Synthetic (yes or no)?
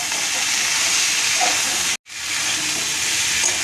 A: no